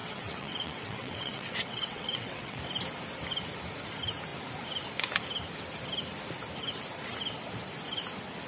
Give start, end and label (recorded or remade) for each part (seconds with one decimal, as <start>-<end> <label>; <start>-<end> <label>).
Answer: 0.0-2.6 remade; 2.6-8.5 recorded